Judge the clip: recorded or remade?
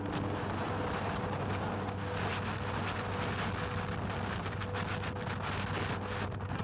recorded